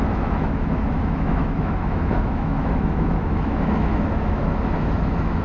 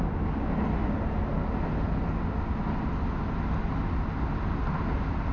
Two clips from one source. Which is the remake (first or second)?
first